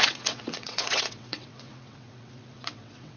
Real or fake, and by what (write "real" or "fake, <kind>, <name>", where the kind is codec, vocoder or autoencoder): fake, vocoder, WaveNeXt